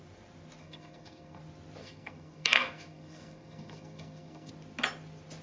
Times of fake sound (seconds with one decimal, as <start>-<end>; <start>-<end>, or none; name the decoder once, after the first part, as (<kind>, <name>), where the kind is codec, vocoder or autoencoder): 0.6-1.4 (codec, SNAC); 1.8-4.5